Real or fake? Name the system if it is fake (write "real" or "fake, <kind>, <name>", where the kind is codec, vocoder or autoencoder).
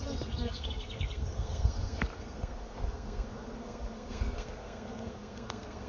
fake, codec, SNAC